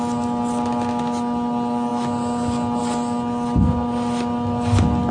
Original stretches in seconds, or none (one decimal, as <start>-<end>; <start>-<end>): 0.0-5.1